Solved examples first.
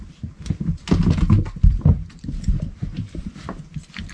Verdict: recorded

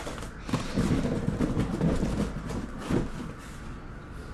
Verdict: recorded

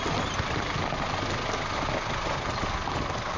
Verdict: recorded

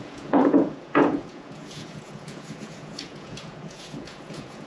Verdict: remade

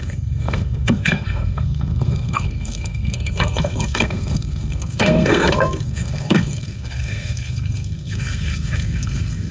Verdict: remade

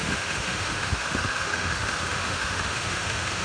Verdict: remade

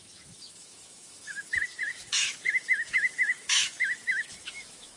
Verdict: remade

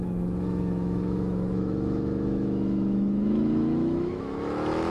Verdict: remade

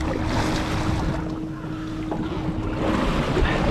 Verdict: recorded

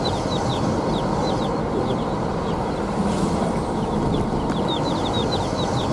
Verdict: recorded